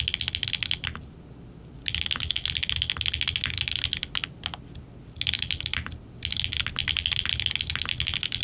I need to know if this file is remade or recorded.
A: recorded